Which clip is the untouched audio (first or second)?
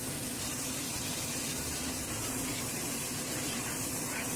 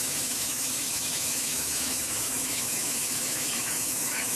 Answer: first